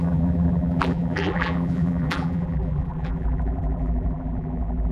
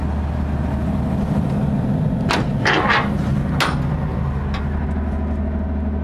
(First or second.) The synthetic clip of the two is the first